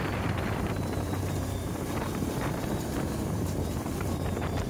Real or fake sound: fake